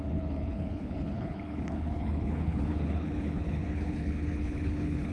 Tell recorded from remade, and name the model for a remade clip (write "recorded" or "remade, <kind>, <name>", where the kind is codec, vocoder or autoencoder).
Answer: remade, codec, HILCodec